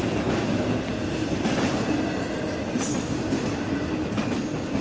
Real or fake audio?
real